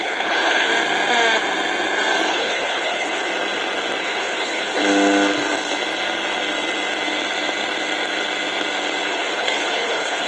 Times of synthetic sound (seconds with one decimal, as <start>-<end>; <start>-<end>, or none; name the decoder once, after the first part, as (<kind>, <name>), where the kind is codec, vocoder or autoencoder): 0.0-0.7 (codec, HILCodec); 2.3-3.3; 4.0-4.8; 9.1-10.3